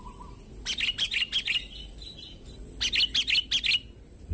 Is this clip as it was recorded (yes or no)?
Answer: yes